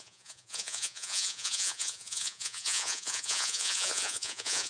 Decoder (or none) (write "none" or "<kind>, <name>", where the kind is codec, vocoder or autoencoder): vocoder, Vocos